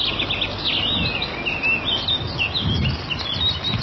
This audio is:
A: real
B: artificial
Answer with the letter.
A